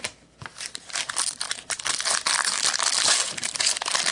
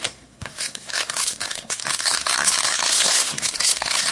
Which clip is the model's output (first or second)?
second